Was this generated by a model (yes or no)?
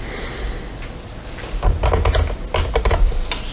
no